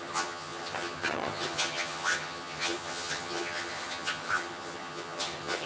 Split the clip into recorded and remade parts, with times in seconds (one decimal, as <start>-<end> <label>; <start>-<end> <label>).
0.0-5.7 remade